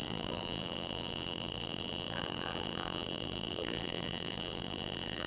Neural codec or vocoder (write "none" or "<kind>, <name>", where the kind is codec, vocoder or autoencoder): vocoder, BigVGAN v2